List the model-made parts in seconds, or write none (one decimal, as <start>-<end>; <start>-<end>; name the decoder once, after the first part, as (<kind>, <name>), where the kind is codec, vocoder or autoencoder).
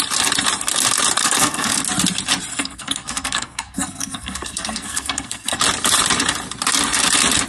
1.2-1.8 (codec, SNAC); 2.5-5.6